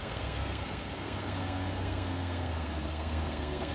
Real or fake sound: fake